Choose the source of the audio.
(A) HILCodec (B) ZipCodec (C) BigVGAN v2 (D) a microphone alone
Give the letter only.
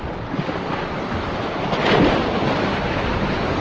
D